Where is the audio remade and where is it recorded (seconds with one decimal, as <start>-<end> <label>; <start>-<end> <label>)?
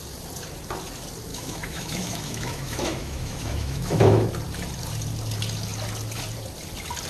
0.0-1.3 recorded; 1.3-4.3 remade; 4.3-7.1 recorded